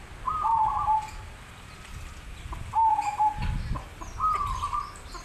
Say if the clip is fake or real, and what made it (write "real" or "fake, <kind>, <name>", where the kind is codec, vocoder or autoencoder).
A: real